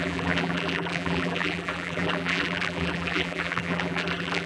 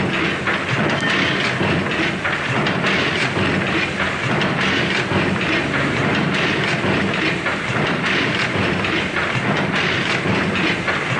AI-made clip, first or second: first